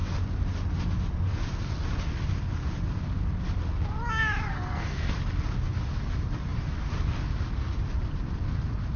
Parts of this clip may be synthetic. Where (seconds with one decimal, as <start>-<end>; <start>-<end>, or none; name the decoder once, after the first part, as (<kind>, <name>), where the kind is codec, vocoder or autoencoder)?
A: 4.5-5.1 (codec, SNAC)